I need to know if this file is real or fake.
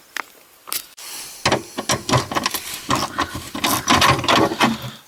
real